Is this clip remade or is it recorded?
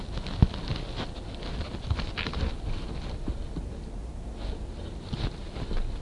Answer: recorded